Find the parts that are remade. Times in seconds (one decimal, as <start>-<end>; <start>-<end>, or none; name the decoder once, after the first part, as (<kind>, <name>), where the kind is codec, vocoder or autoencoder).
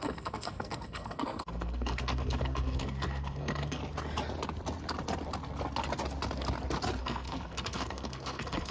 0.0-3.8 (codec, SNAC); 7.0-8.7